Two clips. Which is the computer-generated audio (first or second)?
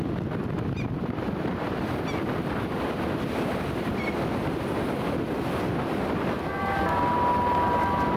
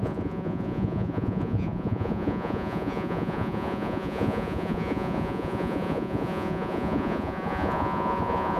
second